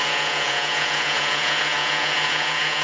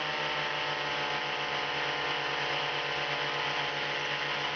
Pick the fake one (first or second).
first